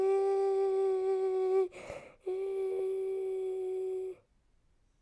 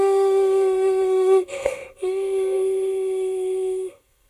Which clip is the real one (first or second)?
first